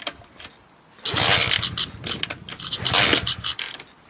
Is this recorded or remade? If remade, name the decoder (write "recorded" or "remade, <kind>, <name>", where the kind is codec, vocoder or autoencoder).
recorded